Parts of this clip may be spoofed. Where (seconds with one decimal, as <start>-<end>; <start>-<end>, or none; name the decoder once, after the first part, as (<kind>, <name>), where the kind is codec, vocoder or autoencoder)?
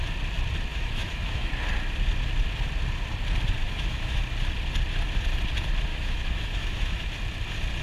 0.7-1.5 (autoencoder, DAC-VAE); 3.6-4.2; 5.9-7.1